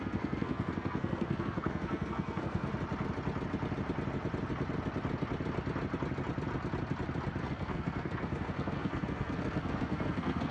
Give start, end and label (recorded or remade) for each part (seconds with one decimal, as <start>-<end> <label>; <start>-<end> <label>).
0.0-2.7 remade; 2.7-7.4 recorded; 7.4-10.5 remade